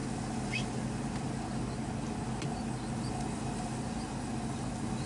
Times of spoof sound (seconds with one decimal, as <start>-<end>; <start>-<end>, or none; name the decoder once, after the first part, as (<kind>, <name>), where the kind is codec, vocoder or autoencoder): none